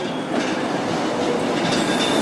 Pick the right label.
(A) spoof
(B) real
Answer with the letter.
B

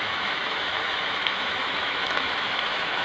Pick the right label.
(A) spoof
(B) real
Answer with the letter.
A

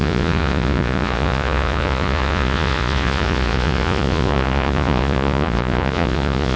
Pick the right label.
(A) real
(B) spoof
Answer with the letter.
B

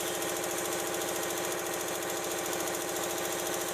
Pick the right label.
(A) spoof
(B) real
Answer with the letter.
B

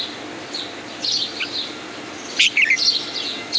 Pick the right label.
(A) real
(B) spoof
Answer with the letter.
B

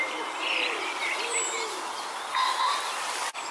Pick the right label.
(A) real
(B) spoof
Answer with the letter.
A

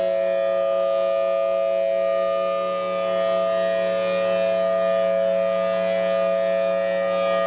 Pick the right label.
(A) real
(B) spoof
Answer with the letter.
A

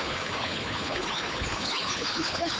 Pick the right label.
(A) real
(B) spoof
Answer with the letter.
B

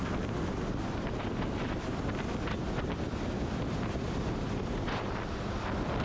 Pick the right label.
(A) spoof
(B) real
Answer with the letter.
B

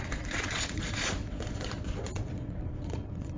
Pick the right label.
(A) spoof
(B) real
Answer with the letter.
A